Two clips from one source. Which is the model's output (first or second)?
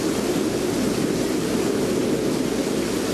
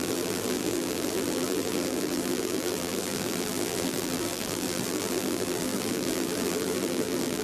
second